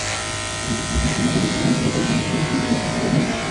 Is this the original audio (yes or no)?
yes